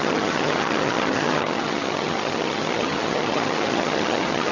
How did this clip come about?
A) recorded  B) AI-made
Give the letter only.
B